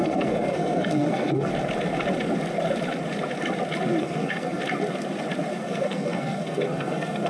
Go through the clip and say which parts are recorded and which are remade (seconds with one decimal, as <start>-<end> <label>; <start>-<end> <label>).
0.0-1.5 remade; 1.5-4.0 recorded; 4.0-4.6 remade; 4.6-5.5 recorded; 5.5-7.3 remade